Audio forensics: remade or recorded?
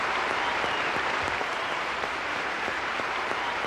remade